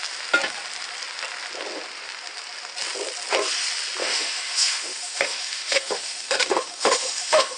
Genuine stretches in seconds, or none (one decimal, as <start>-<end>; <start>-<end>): 0.0-4.0